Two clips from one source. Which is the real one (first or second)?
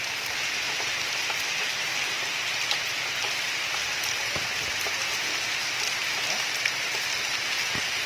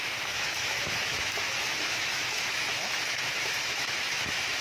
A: first